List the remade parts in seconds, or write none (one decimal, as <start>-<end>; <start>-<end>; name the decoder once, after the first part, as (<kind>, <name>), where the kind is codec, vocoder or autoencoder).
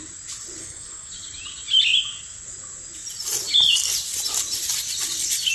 0.6-1.1 (codec, SNAC)